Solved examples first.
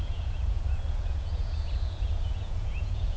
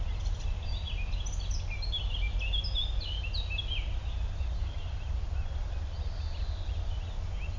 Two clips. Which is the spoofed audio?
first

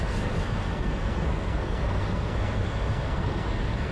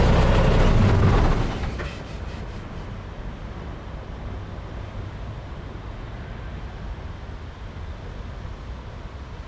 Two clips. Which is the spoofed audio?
first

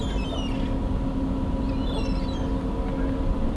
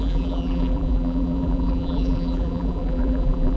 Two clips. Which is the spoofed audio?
second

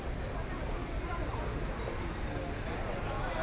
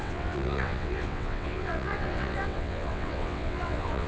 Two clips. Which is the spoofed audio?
second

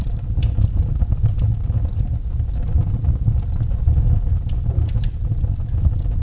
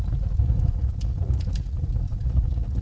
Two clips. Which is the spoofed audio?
second